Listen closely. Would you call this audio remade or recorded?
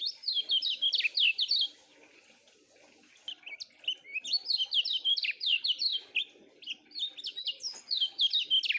recorded